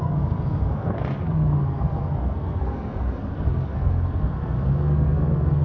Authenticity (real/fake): fake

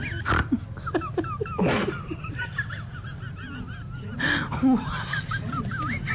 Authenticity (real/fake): real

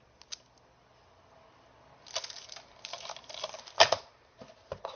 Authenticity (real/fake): real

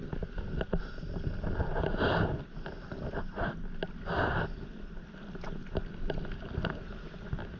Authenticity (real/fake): real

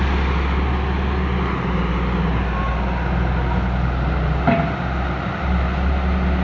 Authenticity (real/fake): real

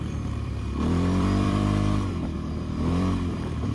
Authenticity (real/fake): fake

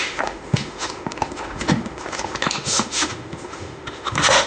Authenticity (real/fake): fake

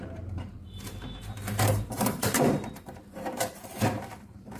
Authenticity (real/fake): fake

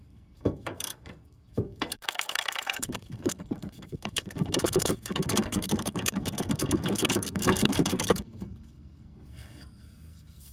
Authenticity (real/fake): fake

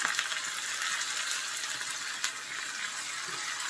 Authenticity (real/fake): real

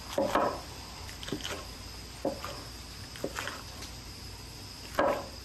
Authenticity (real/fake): real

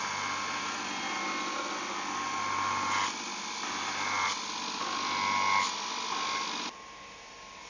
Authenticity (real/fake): real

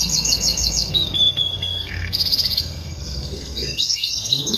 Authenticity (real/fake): fake